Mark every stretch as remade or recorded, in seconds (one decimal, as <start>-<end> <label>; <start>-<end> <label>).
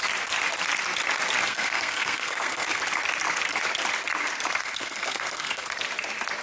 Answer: 0.0-1.4 recorded; 1.4-2.8 remade; 2.8-4.6 recorded; 4.6-5.7 remade; 5.7-6.4 recorded